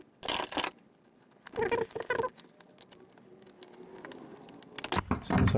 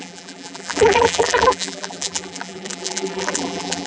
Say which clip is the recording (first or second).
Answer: first